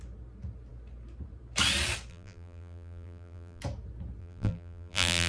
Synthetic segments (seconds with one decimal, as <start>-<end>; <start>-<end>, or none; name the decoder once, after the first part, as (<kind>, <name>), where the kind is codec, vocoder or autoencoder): 2.1-3.6 (vocoder, BigVGAN v2); 4.2-5.3